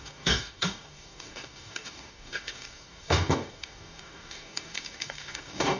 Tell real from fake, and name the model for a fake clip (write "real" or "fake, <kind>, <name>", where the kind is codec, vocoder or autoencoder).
fake, codec, DAC